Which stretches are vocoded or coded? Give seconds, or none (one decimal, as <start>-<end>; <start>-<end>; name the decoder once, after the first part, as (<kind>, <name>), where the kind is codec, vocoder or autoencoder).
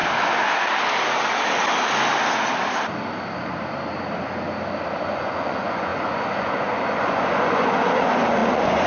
5.0-8.9 (vocoder, Vocos)